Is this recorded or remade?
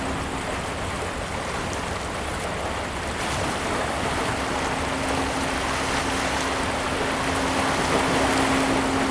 recorded